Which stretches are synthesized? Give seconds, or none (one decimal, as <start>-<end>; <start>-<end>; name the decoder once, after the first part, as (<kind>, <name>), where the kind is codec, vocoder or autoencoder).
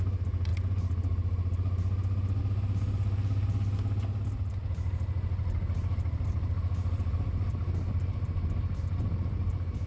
none